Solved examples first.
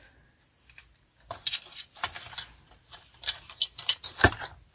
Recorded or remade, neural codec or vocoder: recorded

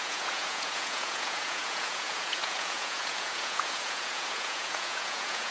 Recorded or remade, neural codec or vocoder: remade, vocoder, Vocos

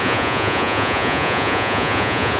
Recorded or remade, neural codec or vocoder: remade, vocoder, Vocos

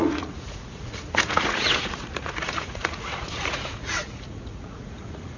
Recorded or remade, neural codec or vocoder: remade, vocoder, Vocos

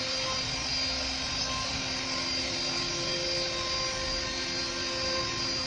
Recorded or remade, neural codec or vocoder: recorded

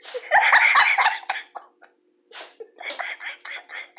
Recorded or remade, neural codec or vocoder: recorded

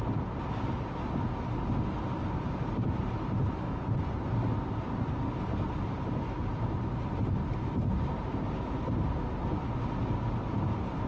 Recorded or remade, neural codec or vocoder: recorded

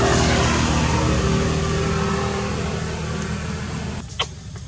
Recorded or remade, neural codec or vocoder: recorded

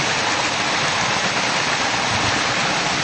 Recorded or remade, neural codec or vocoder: recorded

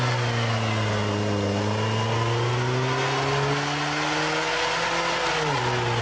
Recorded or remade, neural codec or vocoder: recorded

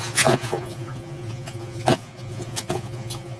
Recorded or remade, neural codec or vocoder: remade, vocoder, Vocos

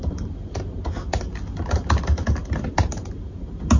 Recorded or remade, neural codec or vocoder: recorded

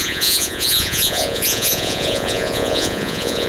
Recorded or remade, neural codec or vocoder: remade, vocoder, Vocos